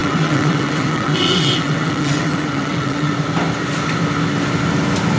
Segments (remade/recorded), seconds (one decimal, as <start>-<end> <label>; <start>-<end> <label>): 0.0-3.1 remade; 3.1-5.2 recorded